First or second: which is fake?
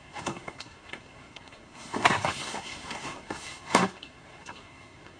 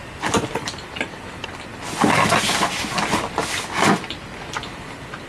first